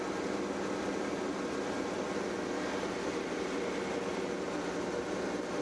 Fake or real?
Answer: real